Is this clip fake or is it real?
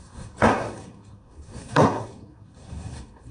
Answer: fake